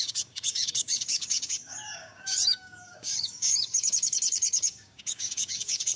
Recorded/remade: remade